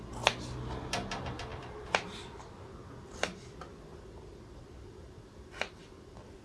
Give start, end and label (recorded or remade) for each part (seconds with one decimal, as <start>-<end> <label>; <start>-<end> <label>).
0.0-6.4 recorded